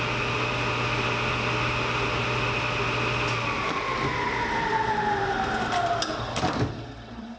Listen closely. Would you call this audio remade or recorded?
recorded